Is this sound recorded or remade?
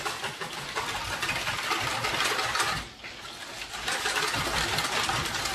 recorded